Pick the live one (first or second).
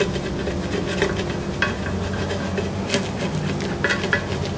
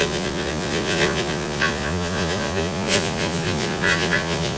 first